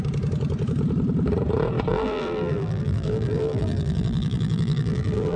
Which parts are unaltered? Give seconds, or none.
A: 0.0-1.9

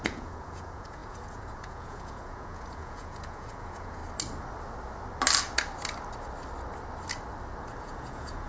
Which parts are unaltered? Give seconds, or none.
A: 4.0-7.8

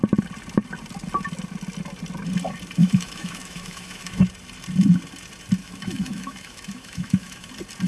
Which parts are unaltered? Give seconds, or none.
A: 0.0-2.8; 4.2-5.6; 7.5-7.9

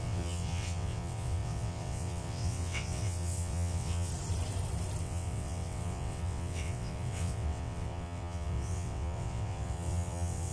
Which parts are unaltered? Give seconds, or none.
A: 4.1-5.0

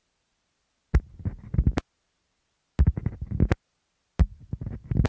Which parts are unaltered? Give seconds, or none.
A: 0.0-5.1

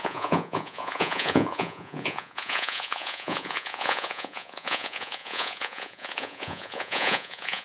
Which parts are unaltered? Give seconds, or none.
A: none